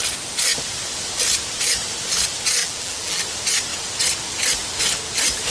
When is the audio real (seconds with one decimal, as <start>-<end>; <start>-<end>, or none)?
0.0-2.6; 3.2-5.5